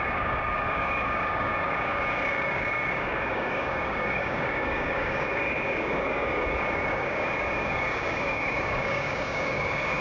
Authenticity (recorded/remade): remade